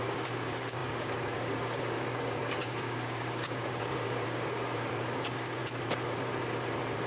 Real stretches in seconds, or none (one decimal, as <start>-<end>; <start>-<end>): 5.6-7.1